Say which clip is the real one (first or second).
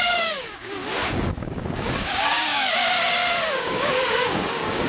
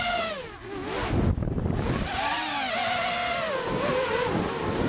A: second